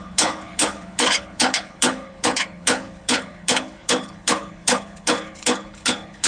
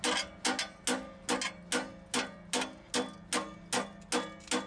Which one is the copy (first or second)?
first